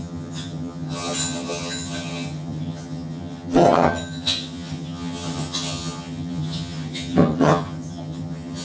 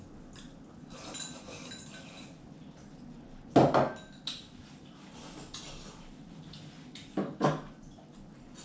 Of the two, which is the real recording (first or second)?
second